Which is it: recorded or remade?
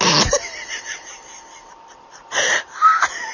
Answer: recorded